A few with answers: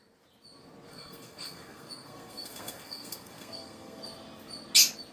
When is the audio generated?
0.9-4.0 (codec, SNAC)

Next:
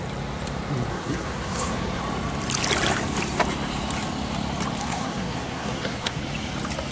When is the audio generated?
0.9-2.0 (codec, SNAC); 4.8-6.2